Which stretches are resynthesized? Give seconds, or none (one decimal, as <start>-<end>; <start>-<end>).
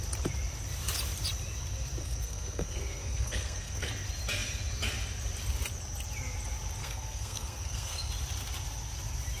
2.0-3.9; 6.8-8.1